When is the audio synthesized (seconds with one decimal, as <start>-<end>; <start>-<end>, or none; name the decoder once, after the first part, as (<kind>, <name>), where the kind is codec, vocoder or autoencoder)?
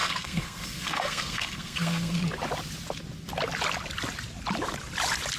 0.0-2.2 (codec, SNAC)